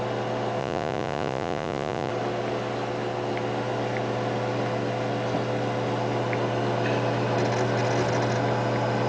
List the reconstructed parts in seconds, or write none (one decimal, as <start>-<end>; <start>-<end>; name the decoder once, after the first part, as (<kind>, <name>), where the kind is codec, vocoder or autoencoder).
0.6-2.1 (vocoder, Vocos)